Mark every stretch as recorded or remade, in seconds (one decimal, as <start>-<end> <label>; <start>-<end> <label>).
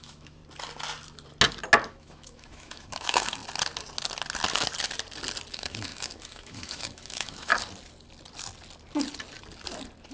0.0-0.4 remade; 0.4-1.9 recorded; 1.9-3.4 remade; 3.4-5.5 recorded; 5.5-7.5 remade; 7.5-10.1 recorded